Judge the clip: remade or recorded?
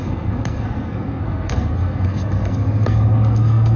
remade